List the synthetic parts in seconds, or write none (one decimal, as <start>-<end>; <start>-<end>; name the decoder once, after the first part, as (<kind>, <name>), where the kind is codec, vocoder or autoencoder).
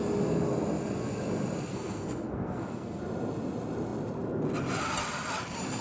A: 1.7-3.0 (codec, SNAC)